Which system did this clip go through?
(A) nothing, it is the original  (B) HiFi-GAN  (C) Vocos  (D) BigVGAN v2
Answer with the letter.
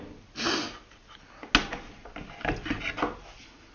A